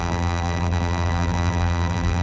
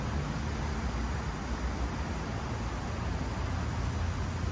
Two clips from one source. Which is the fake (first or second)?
first